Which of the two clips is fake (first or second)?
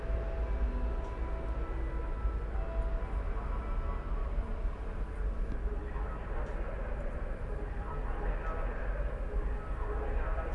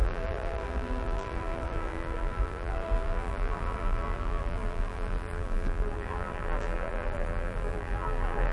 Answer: second